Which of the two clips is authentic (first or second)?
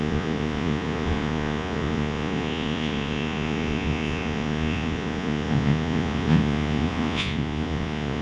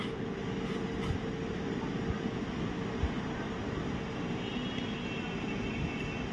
second